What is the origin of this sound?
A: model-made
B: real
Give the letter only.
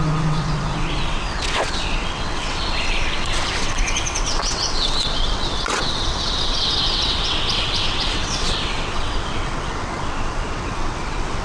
A